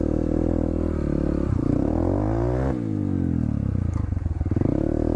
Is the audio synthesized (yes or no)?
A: no